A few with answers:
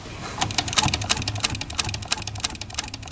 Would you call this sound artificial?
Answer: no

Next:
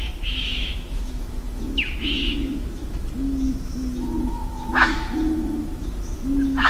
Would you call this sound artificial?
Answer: yes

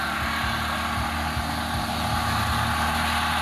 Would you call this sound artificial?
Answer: no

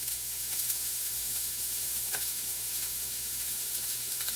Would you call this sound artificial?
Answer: yes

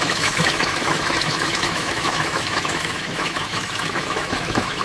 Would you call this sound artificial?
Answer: yes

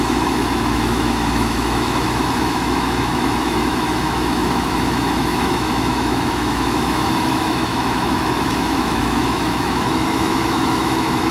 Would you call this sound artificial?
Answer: yes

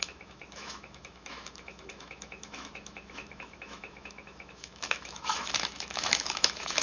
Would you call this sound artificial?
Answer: yes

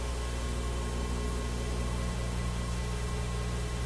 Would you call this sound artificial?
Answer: yes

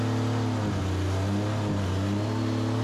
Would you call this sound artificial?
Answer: no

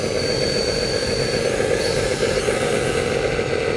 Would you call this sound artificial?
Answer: no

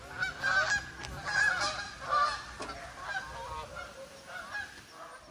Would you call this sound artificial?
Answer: no